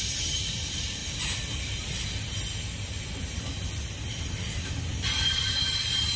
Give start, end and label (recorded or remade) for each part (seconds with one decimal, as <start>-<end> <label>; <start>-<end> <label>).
0.0-1.0 remade; 1.0-4.7 recorded; 4.7-6.2 remade